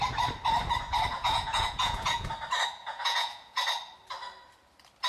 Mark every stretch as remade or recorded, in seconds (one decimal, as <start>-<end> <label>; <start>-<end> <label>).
0.0-1.1 recorded; 1.1-2.3 remade; 2.3-2.8 recorded; 2.8-3.6 remade; 3.6-5.1 recorded